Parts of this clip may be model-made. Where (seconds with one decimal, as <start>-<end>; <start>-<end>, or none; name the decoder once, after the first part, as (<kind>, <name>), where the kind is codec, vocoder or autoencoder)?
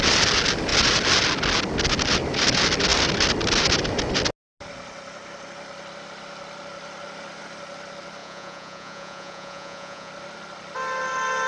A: 8.2-10.1 (vocoder, Vocos)